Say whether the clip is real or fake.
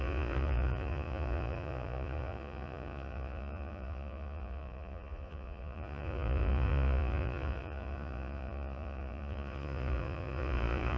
fake